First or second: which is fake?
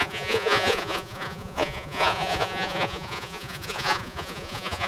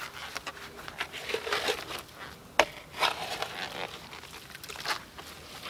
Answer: first